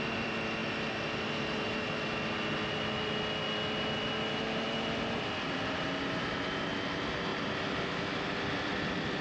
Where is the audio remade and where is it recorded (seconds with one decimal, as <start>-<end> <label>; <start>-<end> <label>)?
0.0-9.2 recorded